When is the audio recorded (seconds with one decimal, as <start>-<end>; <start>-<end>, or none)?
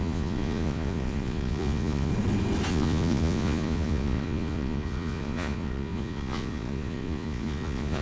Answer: 2.1-2.7